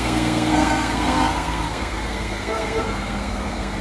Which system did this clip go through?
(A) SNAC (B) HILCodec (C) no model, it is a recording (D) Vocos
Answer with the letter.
A